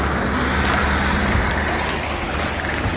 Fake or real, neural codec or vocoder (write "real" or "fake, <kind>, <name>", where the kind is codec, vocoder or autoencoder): real